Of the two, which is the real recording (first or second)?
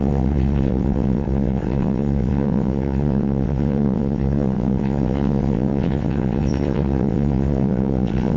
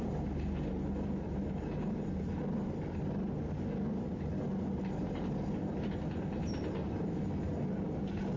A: second